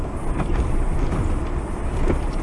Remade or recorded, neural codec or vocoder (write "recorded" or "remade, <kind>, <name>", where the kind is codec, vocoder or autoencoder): recorded